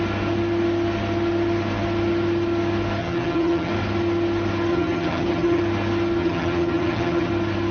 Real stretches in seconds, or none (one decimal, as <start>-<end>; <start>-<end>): 0.0-3.0; 3.7-4.7; 5.6-6.2; 7.3-7.7